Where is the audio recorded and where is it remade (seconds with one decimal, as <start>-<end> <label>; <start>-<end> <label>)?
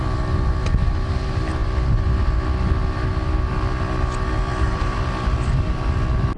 0.0-4.5 recorded; 4.5-5.0 remade; 5.0-6.4 recorded